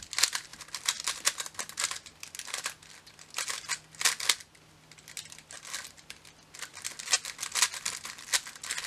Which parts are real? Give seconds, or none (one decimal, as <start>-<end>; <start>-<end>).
0.0-8.9